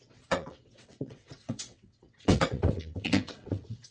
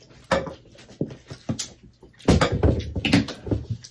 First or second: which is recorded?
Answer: second